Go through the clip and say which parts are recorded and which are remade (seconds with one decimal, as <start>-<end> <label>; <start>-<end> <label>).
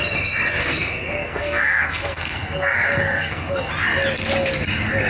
0.0-0.6 recorded; 0.6-3.7 remade; 3.7-5.1 recorded